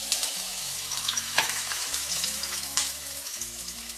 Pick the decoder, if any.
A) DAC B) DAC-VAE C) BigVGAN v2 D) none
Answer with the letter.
B